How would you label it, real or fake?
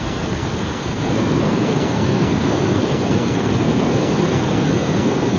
fake